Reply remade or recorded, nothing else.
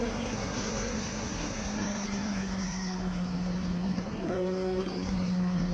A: remade